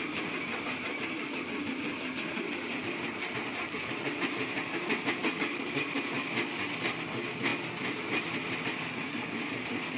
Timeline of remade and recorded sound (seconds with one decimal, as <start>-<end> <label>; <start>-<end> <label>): 0.0-5.2 recorded; 5.2-5.8 remade; 5.8-10.0 recorded